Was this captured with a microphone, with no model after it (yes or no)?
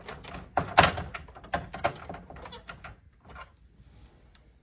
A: yes